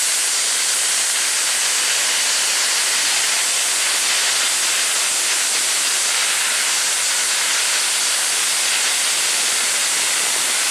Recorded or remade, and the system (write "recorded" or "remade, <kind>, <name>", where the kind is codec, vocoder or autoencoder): recorded